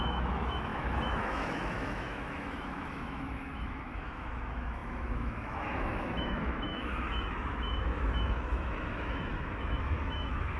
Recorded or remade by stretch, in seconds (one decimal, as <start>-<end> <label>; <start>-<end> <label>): 0.0-10.6 remade